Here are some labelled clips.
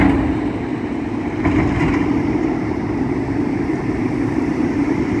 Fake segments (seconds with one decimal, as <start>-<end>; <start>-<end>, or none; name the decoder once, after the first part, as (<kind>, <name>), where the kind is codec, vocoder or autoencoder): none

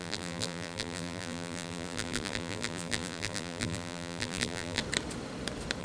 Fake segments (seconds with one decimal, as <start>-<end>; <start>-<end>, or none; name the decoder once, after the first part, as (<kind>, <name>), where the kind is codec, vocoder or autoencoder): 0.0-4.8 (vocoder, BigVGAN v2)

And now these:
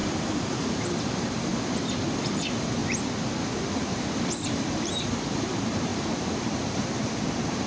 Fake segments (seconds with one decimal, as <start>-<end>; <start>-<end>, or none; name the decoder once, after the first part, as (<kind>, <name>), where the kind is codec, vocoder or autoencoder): 0.0-1.5 (vocoder, BigVGAN v2); 2.1-2.8; 3.5-7.7

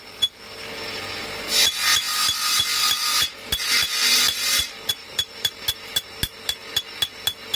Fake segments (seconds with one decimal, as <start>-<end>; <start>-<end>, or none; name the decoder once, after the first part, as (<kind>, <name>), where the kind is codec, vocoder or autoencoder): 5.0-5.6 (vocoder, BigVGAN v2)